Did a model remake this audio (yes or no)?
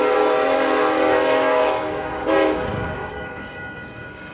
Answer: yes